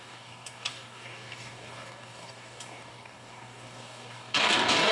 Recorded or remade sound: remade